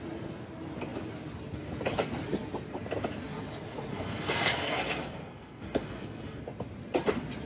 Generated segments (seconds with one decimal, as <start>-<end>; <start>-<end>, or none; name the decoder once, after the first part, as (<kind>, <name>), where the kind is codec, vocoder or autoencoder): 3.9-6.4 (codec, SNAC)